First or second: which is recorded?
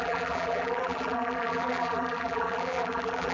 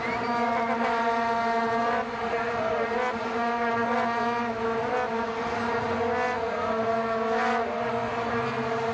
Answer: second